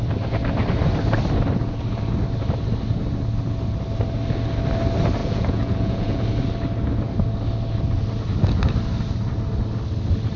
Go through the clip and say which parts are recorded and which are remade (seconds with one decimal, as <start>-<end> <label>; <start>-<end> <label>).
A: 0.0-5.2 recorded; 5.2-6.2 remade; 6.2-10.4 recorded